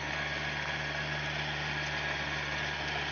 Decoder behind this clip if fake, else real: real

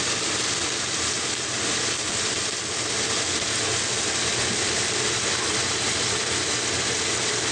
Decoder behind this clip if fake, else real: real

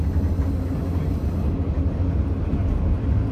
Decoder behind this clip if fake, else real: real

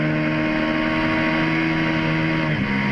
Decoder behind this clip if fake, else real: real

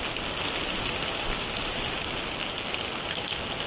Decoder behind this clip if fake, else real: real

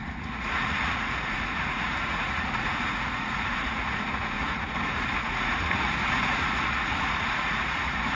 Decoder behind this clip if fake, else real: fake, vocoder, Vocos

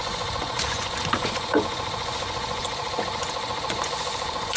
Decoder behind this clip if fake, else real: fake, vocoder, Vocos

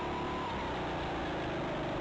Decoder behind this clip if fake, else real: real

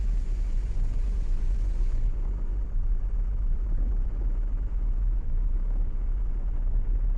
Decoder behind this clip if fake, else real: fake, vocoder, Vocos